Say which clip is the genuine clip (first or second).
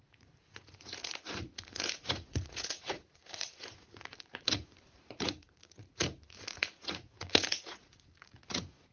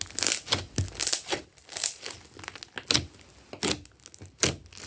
second